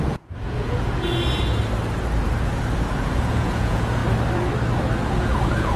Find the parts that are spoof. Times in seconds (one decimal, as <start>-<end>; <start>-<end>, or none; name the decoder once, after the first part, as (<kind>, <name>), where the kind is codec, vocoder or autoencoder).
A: 0.0-1.6 (vocoder, Vocos); 2.9-4.0; 5.2-5.8